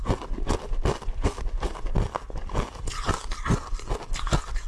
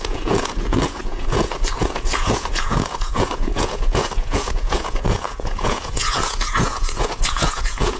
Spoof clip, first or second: second